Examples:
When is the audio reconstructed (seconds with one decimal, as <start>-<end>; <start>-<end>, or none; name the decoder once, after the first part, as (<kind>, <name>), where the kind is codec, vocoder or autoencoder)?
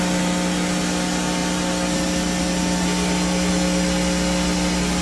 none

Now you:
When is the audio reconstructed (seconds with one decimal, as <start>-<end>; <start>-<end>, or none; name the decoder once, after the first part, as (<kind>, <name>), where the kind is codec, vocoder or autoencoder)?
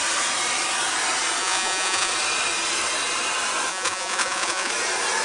1.4-2.1 (vocoder, Vocos); 3.7-4.7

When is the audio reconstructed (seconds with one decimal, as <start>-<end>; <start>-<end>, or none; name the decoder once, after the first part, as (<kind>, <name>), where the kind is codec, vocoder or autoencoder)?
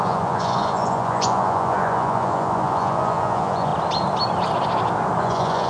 0.0-3.7 (vocoder, Vocos); 5.2-5.7